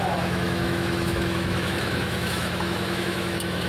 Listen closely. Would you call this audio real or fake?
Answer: fake